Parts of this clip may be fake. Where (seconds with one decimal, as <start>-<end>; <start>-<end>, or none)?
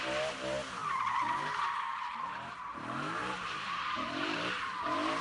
1.9-4.6